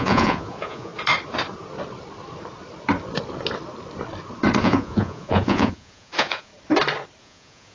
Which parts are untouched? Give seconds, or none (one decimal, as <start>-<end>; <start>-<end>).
0.9-4.6; 6.5-7.2